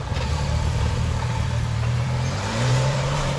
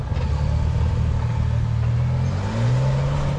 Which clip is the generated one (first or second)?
first